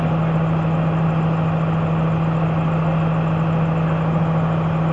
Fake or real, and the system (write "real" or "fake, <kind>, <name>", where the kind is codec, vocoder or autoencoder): real